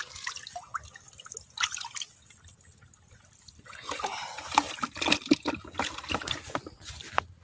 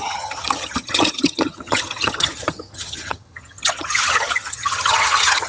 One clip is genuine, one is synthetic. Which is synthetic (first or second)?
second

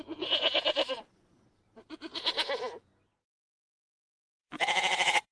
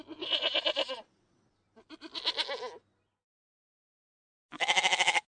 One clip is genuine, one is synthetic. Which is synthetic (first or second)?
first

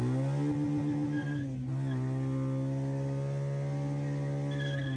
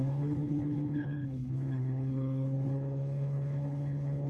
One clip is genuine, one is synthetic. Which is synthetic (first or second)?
second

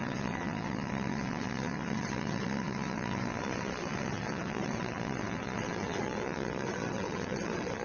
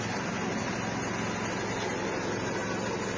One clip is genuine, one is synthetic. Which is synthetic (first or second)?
first